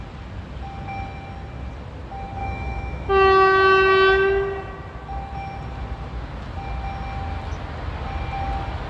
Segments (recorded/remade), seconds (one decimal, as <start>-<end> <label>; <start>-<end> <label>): 0.0-2.4 recorded; 2.4-3.1 remade; 3.1-8.9 recorded